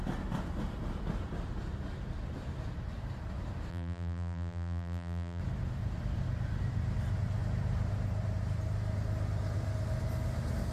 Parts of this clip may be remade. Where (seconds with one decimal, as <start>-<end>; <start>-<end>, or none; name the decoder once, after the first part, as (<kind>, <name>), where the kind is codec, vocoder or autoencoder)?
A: 3.7-5.4 (vocoder, BigVGAN v2)